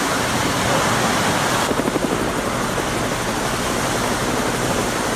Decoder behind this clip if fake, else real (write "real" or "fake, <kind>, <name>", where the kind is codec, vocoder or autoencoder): real